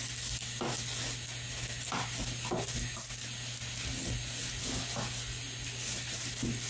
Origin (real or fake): real